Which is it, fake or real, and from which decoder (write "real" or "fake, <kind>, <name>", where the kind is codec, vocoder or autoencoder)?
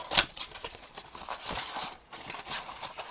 real